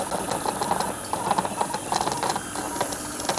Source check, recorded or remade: recorded